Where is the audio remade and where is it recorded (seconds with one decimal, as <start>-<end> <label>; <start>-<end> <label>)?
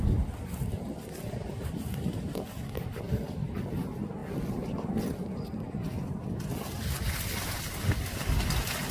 0.0-8.9 recorded